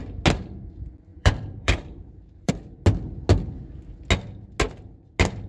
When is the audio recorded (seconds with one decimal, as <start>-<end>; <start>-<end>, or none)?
0.0-1.1; 2.5-5.5